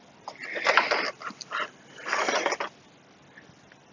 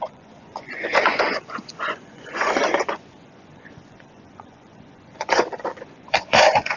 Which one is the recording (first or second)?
first